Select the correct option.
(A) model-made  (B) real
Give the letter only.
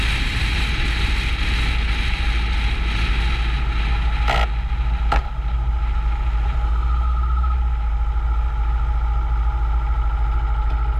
B